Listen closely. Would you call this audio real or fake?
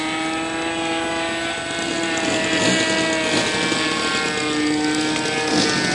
real